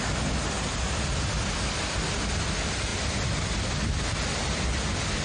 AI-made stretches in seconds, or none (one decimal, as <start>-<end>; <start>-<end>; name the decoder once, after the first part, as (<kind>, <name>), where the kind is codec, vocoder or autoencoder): none